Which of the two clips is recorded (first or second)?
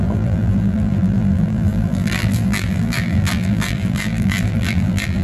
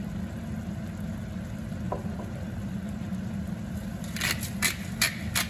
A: second